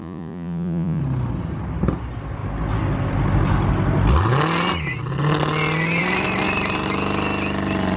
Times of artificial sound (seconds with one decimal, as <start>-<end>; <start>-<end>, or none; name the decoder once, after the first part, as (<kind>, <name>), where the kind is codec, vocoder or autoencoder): 0.0-1.0 (vocoder, Vocos)